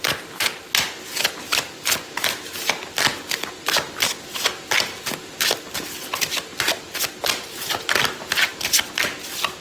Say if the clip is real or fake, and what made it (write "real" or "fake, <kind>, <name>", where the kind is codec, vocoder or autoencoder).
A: real